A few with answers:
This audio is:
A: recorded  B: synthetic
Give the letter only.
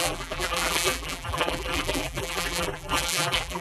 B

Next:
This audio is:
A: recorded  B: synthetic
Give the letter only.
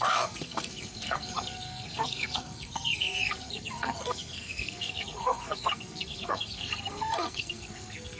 B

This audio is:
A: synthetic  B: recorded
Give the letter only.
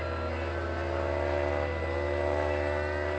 B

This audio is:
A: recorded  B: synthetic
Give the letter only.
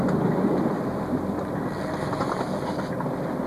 A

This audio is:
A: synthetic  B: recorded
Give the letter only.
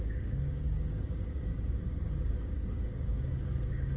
A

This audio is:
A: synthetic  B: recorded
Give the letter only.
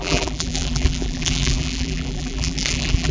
A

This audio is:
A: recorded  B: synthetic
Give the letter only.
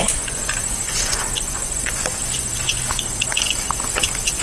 B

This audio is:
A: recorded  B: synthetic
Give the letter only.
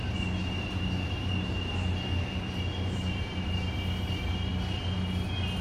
A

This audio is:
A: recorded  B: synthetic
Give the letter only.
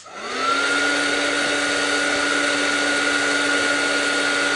A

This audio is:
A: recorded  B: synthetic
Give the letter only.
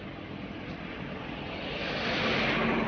A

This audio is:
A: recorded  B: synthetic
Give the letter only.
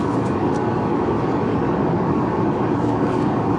B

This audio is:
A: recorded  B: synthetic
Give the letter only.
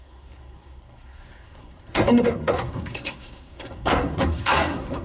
B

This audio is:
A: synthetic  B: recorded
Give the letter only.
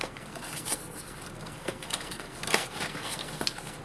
A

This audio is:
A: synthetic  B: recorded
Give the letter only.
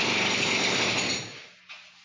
B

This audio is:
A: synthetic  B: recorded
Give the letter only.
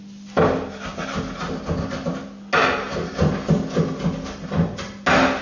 B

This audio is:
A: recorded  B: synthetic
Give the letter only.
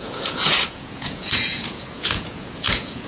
B